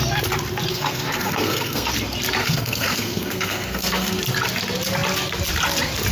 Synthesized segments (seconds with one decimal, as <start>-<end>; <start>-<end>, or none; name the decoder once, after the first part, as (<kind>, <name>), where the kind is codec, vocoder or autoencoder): 0.7-1.9 (codec, SNAC); 2.4-4.2